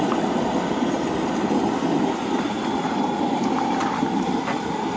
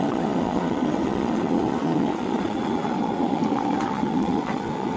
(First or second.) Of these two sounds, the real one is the first